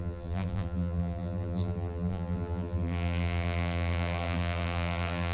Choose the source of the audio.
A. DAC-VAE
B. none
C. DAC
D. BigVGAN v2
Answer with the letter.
D